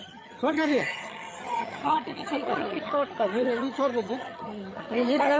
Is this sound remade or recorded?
remade